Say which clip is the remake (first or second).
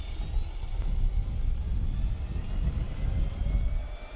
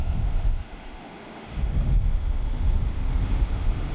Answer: second